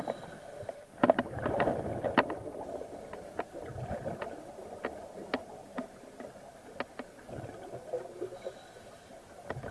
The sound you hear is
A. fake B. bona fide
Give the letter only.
B